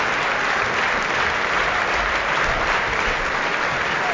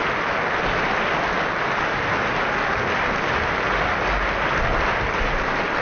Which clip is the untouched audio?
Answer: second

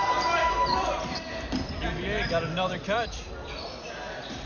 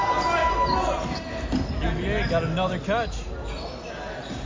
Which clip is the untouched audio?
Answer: second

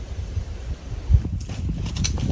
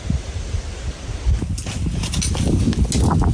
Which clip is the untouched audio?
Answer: second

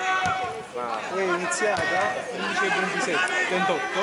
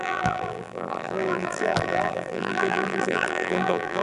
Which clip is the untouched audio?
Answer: first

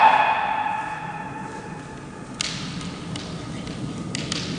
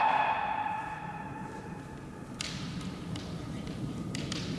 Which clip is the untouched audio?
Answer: first